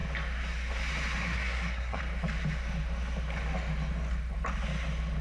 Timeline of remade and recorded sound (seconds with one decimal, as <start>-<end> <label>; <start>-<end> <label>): 0.0-1.2 recorded; 1.2-2.0 remade; 2.0-5.2 recorded